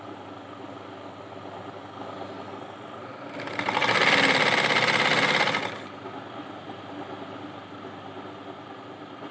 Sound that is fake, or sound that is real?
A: real